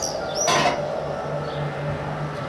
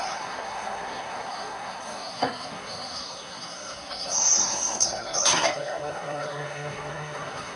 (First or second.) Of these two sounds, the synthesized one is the second